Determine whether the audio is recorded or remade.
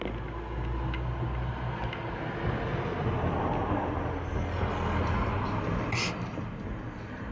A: recorded